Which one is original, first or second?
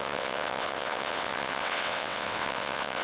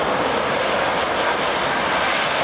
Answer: second